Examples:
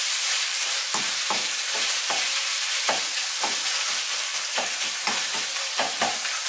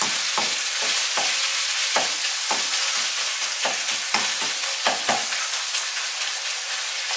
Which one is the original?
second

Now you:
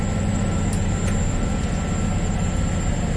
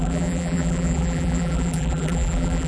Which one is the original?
first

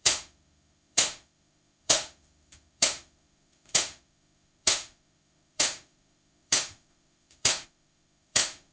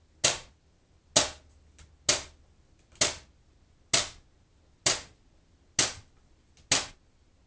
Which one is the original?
second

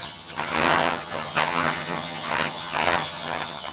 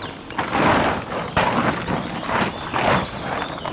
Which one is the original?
second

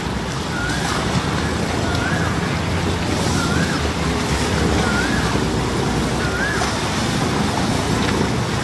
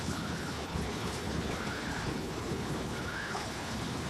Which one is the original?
first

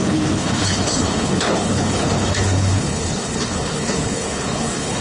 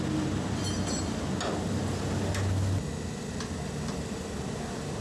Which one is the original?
second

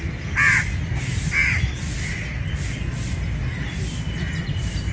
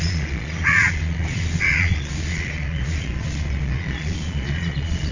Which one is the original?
first